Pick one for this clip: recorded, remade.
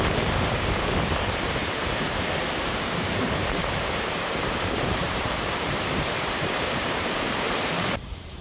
remade